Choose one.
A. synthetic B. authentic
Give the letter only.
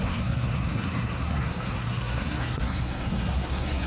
A